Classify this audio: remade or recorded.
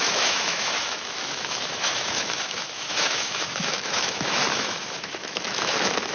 remade